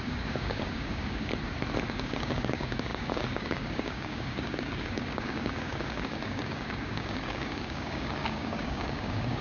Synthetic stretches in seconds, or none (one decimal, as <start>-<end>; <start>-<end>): 0.0-1.3; 1.9-9.4